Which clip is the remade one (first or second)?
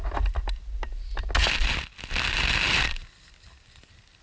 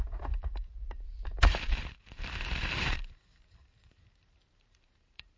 second